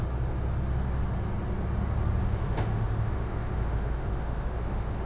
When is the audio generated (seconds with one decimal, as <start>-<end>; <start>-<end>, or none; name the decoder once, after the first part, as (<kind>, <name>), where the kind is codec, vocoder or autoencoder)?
2.2-5.1 (autoencoder, DAC-VAE)